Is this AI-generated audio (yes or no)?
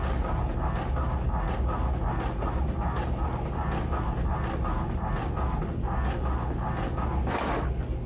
no